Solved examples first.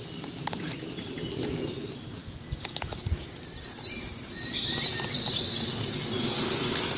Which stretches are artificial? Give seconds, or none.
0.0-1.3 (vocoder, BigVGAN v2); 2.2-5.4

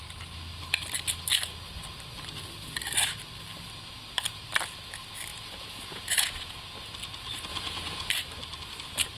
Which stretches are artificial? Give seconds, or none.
5.3-6.6 (vocoder, Vocos); 7.5-8.1

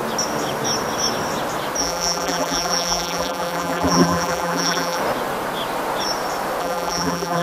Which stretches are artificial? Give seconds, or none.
1.8-5.0 (vocoder, BigVGAN v2); 6.6-7.4

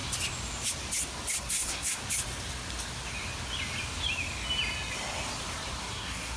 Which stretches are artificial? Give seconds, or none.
1.4-2.0 (codec, SNAC); 5.8-6.4

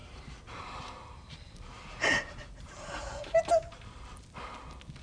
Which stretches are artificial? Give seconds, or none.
0.0-3.0 (vocoder, BigVGAN v2)

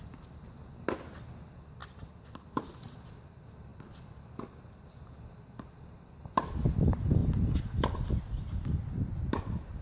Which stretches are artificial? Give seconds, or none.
none

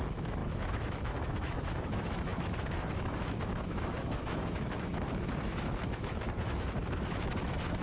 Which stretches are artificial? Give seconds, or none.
0.0-7.8 (autoencoder, DAC-VAE)

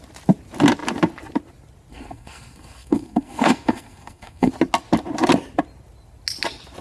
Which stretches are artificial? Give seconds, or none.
1.9-4.5 (codec, SNAC)